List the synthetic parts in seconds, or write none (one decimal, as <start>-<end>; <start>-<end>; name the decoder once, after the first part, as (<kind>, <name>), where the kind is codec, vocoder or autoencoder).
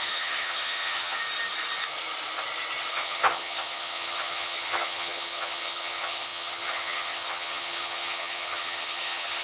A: 0.0-1.2 (vocoder, HiFi-GAN); 2.9-9.4